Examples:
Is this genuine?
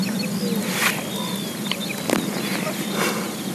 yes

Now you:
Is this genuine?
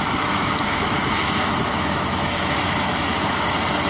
no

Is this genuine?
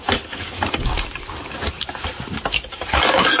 yes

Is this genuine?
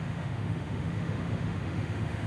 no